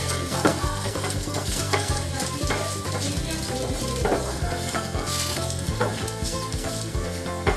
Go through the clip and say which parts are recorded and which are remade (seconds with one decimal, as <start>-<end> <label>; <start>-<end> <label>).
0.0-2.1 remade; 2.1-4.3 recorded; 4.3-7.6 remade